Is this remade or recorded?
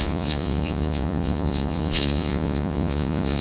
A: remade